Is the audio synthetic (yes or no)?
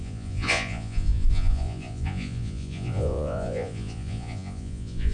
yes